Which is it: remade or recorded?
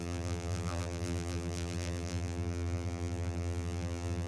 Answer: remade